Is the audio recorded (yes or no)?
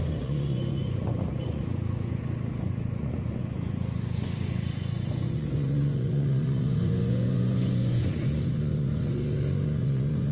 no